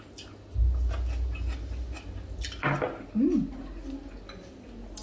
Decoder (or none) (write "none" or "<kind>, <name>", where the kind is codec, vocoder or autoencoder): none